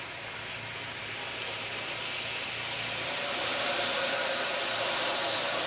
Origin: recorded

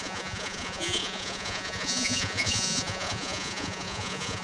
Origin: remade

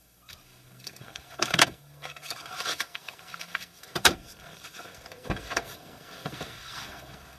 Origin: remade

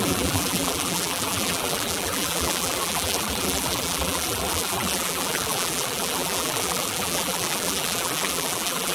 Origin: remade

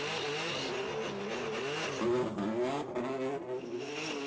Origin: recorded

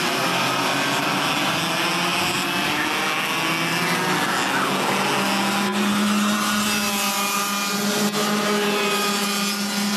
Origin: recorded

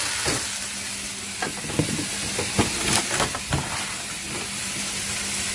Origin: recorded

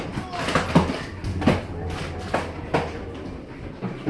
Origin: recorded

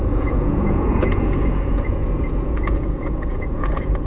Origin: remade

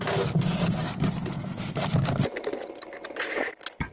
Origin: recorded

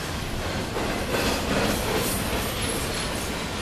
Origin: recorded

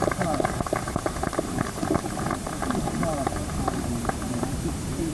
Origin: remade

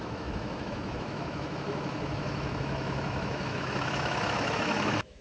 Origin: remade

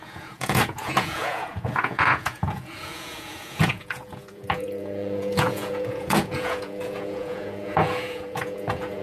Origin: remade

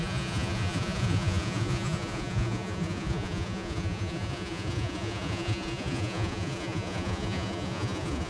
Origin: remade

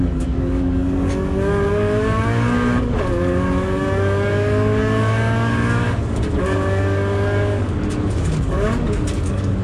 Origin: remade